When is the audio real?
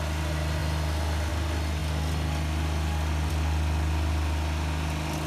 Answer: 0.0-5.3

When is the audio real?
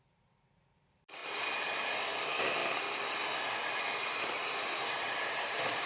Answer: 1.2-2.2; 2.6-5.1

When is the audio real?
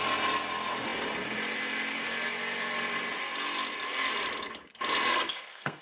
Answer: 0.0-5.1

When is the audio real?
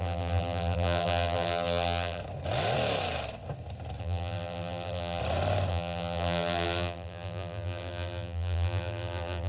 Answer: 2.2-4.0; 5.2-5.7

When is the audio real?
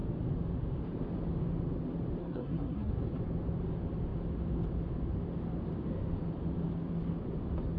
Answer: 0.0-2.2; 2.9-7.8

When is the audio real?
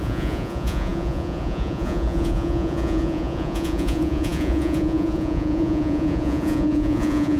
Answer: none